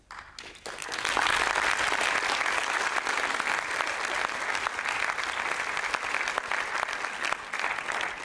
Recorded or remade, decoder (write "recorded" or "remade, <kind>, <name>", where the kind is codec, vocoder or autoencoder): recorded